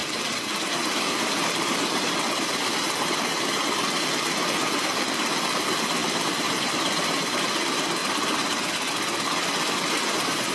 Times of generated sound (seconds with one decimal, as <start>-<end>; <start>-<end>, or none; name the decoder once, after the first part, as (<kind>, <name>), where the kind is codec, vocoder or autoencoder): 0.0-2.1 (vocoder, BigVGAN v2); 6.0-7.4; 8.0-8.9